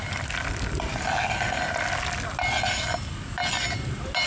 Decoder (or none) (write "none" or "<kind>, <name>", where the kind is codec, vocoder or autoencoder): none